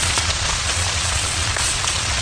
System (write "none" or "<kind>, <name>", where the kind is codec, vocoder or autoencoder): vocoder, Vocos